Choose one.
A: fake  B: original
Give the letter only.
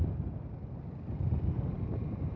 B